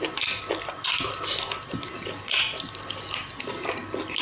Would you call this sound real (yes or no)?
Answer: yes